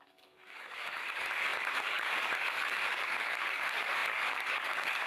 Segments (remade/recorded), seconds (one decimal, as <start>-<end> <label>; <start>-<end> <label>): 0.0-5.1 remade